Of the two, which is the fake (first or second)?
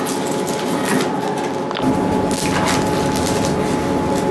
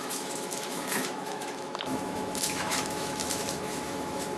second